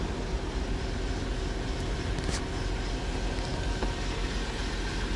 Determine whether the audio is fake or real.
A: real